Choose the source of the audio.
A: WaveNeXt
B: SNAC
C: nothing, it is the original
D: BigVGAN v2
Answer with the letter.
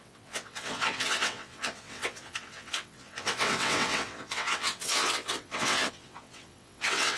A